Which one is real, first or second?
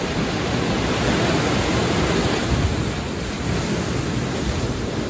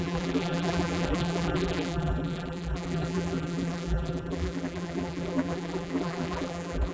first